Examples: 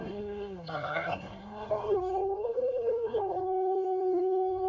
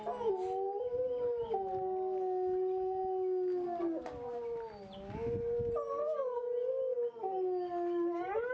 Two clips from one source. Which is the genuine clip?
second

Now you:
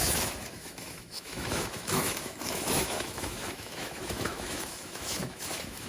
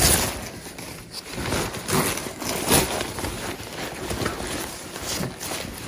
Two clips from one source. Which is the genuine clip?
second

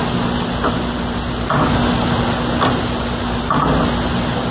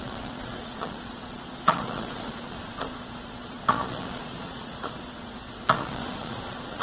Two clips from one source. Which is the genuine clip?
first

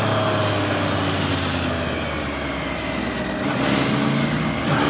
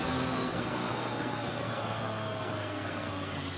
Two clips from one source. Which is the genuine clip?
first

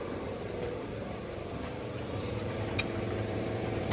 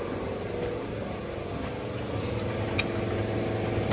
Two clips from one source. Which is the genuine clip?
second